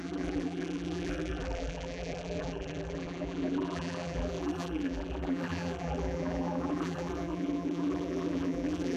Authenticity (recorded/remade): remade